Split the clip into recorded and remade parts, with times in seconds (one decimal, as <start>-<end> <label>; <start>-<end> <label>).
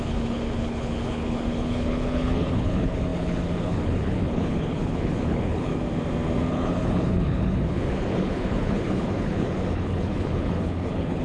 0.0-5.7 remade; 5.7-6.5 recorded; 6.5-11.2 remade